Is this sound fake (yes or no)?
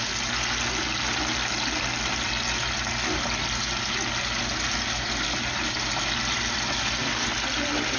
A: no